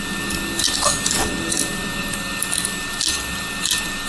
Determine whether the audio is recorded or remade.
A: recorded